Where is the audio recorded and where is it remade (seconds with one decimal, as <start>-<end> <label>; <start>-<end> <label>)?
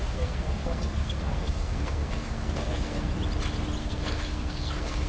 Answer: 0.0-3.1 remade; 3.1-3.8 recorded; 3.8-5.1 remade